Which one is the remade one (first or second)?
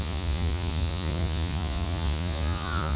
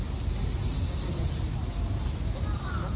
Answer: first